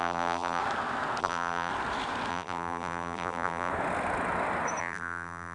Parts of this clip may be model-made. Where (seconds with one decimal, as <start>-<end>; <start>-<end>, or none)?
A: 0.0-0.6; 1.2-1.7; 2.3-3.7; 4.8-5.5